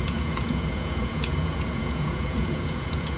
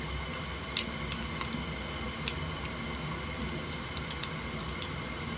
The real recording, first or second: second